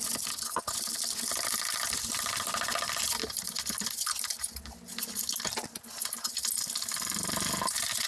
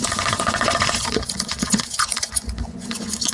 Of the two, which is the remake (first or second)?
second